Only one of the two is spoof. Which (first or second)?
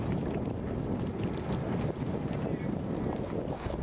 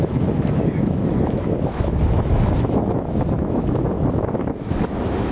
second